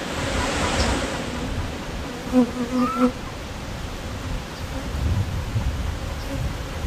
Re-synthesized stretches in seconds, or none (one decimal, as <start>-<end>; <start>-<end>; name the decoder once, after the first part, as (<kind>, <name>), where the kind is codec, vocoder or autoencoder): 0.0-1.2 (vocoder, BigVGAN v2)